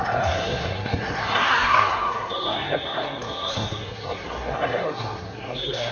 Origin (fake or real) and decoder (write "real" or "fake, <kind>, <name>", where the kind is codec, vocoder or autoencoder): fake, codec, SNAC